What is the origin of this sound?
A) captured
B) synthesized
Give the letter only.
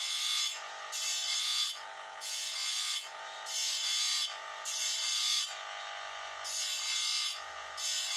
B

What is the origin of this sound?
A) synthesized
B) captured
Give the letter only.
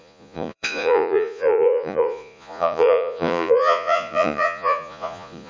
A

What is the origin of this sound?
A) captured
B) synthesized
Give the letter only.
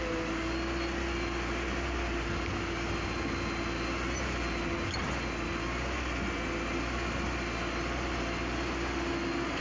A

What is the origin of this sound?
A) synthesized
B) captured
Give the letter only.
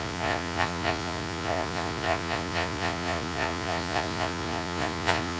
A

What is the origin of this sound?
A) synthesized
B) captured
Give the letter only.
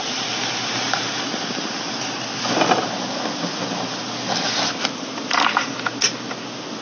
B